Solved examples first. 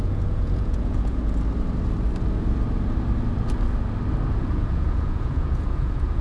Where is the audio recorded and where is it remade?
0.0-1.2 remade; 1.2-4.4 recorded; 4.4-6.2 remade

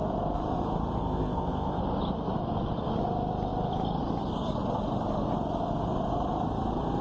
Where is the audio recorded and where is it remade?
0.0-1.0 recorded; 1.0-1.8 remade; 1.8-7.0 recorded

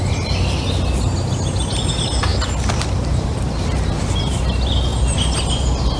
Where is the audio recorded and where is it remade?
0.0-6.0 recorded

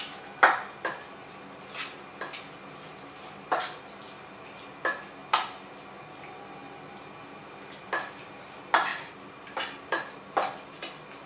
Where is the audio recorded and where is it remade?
0.0-11.3 recorded

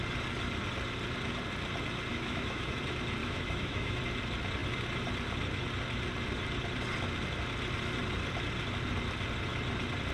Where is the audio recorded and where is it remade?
0.0-2.1 recorded; 2.1-2.8 remade; 2.8-3.2 recorded; 3.2-4.0 remade; 4.0-10.1 recorded

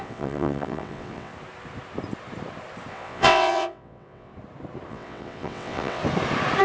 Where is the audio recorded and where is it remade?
0.0-1.3 remade; 1.3-2.9 recorded; 2.9-4.3 remade; 4.3-4.9 recorded; 4.9-6.0 remade; 6.0-6.6 recorded

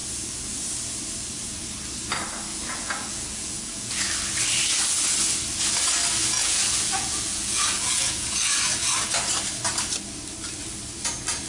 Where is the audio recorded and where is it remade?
0.0-2.5 recorded; 2.5-4.1 remade; 4.1-6.2 recorded; 6.2-8.9 remade; 8.9-11.5 recorded

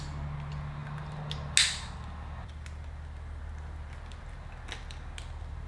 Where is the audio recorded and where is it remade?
0.0-5.7 recorded